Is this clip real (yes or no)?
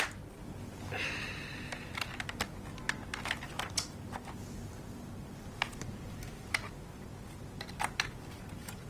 yes